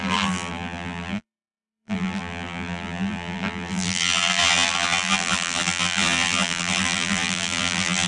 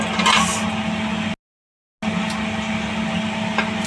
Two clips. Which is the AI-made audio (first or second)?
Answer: first